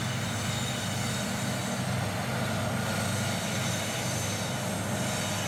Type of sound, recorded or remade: recorded